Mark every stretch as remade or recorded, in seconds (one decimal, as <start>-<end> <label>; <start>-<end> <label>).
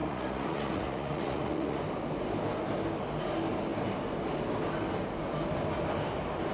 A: 0.0-1.8 remade; 1.8-6.5 recorded